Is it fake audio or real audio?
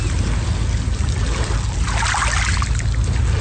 real